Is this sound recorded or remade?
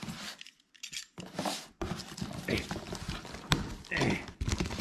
recorded